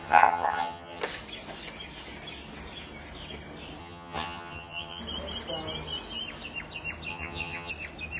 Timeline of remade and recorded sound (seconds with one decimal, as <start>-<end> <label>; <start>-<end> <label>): 0.0-1.0 remade; 1.0-3.8 recorded; 3.8-5.0 remade; 5.0-7.1 recorded; 7.1-7.7 remade; 7.7-8.2 recorded